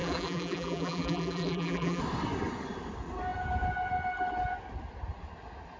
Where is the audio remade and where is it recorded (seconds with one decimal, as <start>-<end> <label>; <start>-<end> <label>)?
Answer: 0.0-2.0 remade; 2.0-5.8 recorded

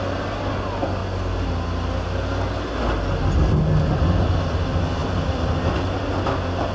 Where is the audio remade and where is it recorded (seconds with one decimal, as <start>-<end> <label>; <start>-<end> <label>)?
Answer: 0.0-1.0 recorded; 1.0-1.5 remade; 1.5-5.0 recorded; 5.0-5.6 remade; 5.6-6.7 recorded

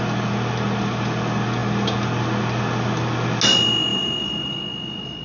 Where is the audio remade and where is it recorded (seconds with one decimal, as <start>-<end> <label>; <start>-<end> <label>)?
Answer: 0.0-3.9 recorded; 3.9-4.5 remade; 4.5-5.2 recorded